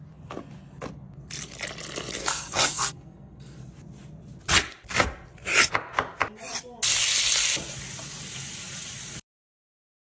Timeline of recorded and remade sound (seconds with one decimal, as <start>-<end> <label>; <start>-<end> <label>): 0.0-2.2 recorded; 2.2-3.7 remade; 3.7-10.2 recorded